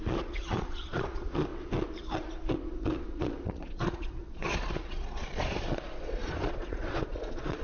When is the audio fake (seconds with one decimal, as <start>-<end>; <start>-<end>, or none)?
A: 0.0-1.5; 3.0-7.6